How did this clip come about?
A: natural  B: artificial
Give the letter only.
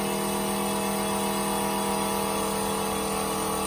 A